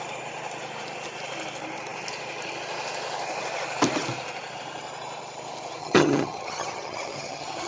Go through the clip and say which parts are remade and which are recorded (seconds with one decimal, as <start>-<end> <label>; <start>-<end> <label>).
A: 0.0-5.8 recorded; 5.8-7.7 remade